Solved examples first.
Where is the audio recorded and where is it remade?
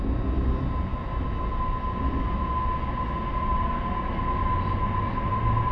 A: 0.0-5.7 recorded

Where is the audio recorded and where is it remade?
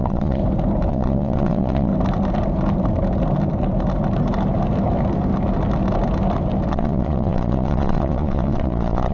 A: 0.0-0.4 remade; 0.4-0.9 recorded; 0.9-1.9 remade; 1.9-6.7 recorded; 6.7-9.1 remade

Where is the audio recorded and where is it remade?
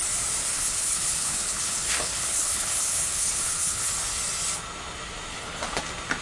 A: 0.0-0.4 recorded; 0.4-3.9 remade; 3.9-5.3 recorded; 5.3-5.8 remade; 5.8-6.2 recorded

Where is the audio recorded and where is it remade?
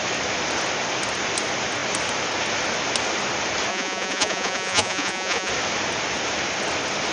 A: 0.0-3.7 recorded; 3.7-5.5 remade; 5.5-7.1 recorded